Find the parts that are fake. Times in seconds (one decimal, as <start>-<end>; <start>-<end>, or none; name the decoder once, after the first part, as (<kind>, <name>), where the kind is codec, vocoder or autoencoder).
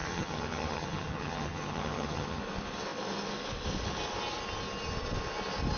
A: 0.0-2.4 (vocoder, HiFi-GAN)